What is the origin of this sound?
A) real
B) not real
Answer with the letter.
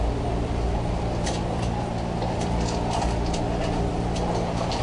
A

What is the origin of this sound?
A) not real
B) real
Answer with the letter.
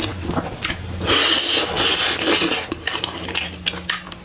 B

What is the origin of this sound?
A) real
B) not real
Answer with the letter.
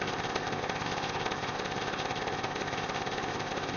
B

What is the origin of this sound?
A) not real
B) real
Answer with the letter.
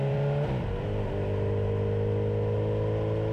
B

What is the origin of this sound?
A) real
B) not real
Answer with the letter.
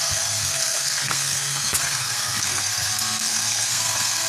B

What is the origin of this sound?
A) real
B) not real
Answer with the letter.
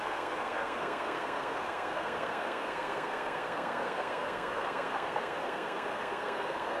B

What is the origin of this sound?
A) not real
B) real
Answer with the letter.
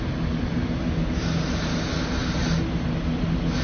B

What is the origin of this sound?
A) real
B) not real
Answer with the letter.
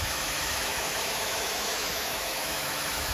B